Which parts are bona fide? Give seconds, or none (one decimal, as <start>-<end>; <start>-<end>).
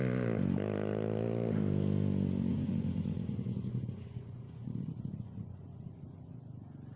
0.0-2.5